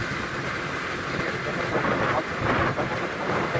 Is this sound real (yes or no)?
yes